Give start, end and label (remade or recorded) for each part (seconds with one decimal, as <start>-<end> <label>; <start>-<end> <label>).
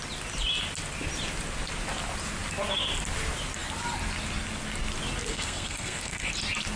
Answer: 0.0-5.3 recorded; 5.3-6.3 remade; 6.3-6.8 recorded